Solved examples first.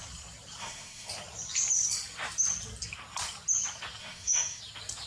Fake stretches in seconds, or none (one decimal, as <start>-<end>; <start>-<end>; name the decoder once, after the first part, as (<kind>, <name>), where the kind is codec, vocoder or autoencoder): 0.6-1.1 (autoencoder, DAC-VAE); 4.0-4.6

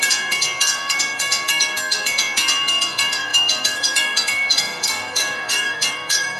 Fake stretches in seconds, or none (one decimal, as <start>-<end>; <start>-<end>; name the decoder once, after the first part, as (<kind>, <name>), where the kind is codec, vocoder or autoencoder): 0.0-6.4 (codec, SNAC)

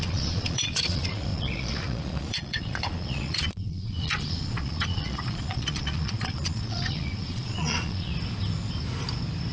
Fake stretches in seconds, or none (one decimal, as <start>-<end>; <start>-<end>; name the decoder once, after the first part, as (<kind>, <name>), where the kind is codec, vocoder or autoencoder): 0.0-8.1 (vocoder, Vocos)

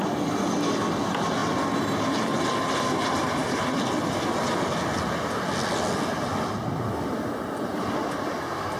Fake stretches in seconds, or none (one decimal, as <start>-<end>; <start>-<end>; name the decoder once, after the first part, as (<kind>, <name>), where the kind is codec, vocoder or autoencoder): none

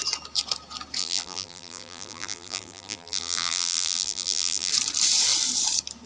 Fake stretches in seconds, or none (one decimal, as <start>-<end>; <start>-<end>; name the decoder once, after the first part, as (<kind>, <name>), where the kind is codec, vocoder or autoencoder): 1.0-4.7 (vocoder, BigVGAN v2)